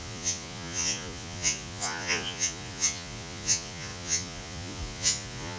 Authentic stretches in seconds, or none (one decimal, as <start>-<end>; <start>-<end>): none

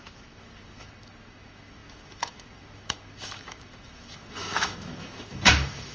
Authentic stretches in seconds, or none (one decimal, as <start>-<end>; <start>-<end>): none